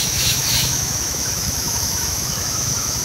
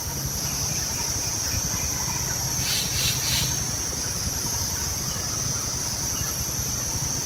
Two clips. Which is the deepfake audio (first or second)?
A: first